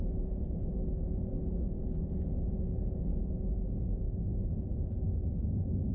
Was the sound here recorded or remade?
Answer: remade